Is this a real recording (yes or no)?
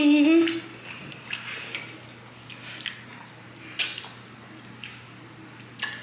yes